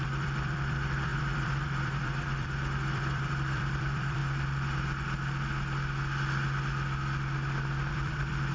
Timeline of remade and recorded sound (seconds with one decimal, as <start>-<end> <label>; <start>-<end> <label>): 0.0-4.2 remade; 4.2-7.9 recorded; 7.9-8.5 remade